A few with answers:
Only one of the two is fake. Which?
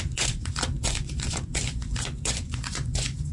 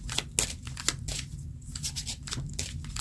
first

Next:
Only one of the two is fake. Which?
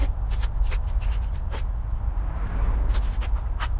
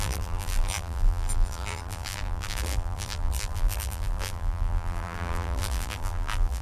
second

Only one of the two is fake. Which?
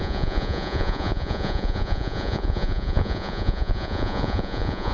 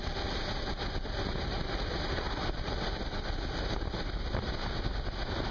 first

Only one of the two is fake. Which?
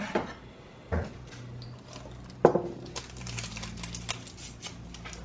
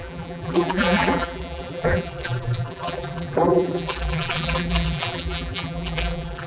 second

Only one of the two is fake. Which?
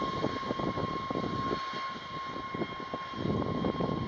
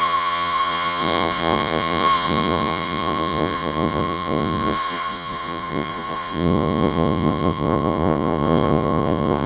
second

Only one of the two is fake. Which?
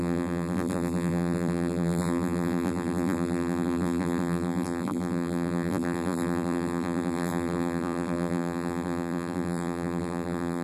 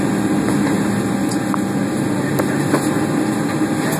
first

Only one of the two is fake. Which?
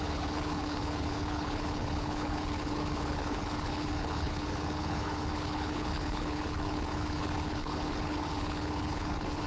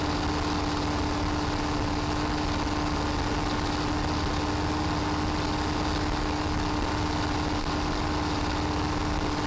first